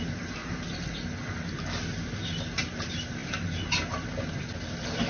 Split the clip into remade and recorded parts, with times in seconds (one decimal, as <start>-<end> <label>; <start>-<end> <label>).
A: 0.0-0.4 recorded; 0.4-1.5 remade; 1.5-3.2 recorded; 3.2-4.4 remade; 4.4-5.1 recorded